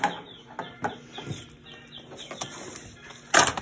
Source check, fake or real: real